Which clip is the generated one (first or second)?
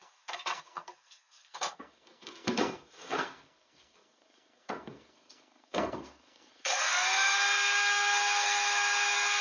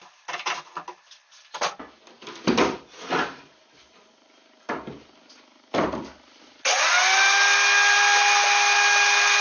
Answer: first